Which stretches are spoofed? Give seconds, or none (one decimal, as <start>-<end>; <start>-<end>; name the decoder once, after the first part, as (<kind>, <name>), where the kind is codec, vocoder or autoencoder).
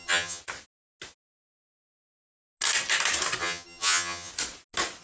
0.0-0.4 (vocoder, HiFi-GAN); 3.4-4.3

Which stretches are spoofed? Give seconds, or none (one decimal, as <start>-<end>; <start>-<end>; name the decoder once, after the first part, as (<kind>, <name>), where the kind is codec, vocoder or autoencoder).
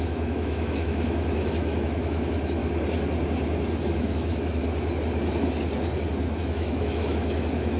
0.0-2.6 (autoencoder, DAC-VAE); 3.8-4.6; 6.4-7.8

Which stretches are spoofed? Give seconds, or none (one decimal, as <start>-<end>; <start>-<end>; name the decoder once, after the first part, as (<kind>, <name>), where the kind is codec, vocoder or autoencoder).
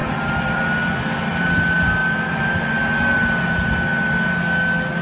0.0-0.6 (vocoder, BigVGAN v2)